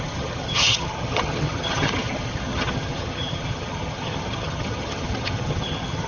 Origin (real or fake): fake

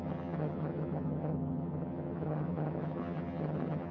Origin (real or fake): fake